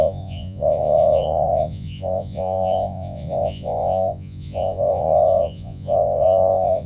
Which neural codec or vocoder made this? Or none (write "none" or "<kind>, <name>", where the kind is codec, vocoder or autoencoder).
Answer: vocoder, Vocos